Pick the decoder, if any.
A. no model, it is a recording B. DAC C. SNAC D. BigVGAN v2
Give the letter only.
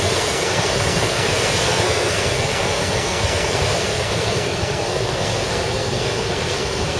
C